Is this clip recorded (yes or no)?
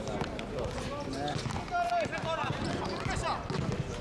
yes